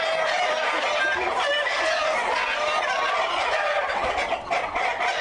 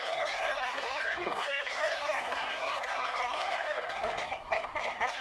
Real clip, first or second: first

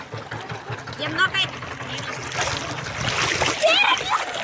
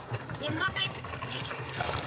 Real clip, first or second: first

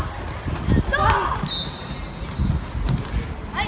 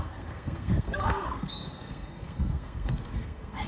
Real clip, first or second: first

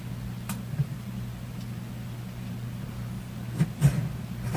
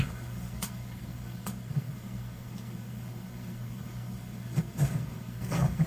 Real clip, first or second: first